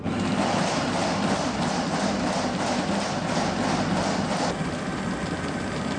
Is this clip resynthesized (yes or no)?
no